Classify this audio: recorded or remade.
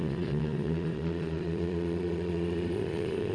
remade